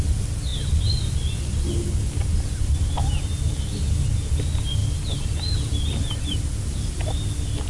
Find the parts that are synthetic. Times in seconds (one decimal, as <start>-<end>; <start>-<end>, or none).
none